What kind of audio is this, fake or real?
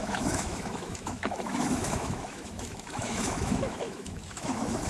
fake